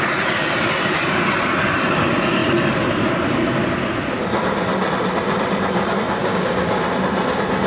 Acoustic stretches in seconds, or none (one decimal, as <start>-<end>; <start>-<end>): 0.0-6.2; 6.8-7.7